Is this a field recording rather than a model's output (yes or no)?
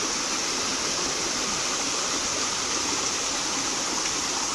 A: yes